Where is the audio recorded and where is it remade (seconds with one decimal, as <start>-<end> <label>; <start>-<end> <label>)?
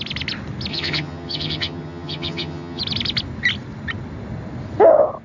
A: 0.0-0.7 recorded; 0.7-2.8 remade; 2.8-5.2 recorded